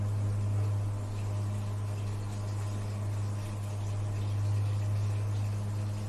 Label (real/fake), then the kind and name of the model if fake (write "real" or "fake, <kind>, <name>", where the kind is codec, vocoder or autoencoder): real